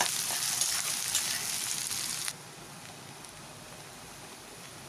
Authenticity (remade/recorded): recorded